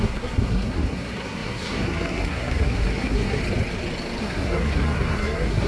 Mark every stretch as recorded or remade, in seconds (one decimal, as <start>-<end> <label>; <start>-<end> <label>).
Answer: 0.0-3.4 remade; 3.4-4.2 recorded; 4.2-5.7 remade